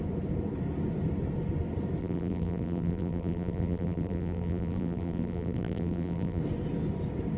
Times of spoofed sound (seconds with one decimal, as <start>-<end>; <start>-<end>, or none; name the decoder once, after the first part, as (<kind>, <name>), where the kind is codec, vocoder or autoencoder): 2.0-6.4 (vocoder, BigVGAN v2)